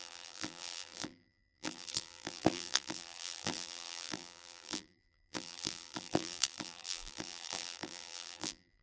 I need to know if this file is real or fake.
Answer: fake